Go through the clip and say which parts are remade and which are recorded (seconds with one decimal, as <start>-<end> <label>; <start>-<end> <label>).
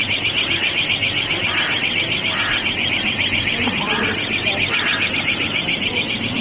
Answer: 0.0-6.4 recorded